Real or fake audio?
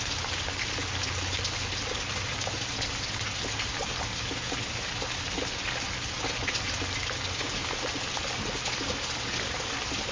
real